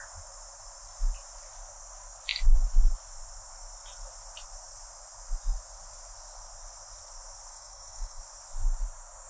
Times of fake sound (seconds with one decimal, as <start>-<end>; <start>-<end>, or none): 7.5-8.2